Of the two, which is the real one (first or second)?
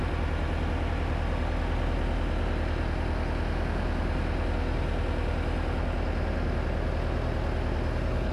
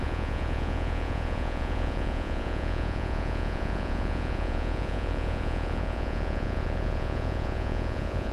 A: first